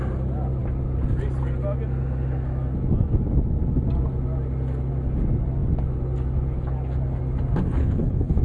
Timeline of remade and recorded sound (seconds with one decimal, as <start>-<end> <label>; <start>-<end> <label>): 0.0-7.8 recorded; 7.8-8.4 remade